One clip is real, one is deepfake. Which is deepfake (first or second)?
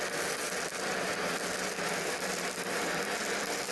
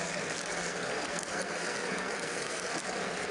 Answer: second